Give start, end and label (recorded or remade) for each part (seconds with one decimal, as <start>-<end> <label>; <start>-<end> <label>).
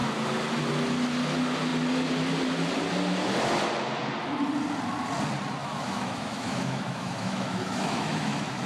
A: 0.0-5.6 recorded; 5.6-8.7 remade